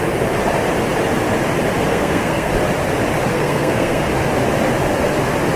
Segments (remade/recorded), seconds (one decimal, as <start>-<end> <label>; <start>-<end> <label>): 0.0-1.9 recorded; 1.9-2.5 remade; 2.5-3.3 recorded; 3.3-4.1 remade; 4.1-5.6 recorded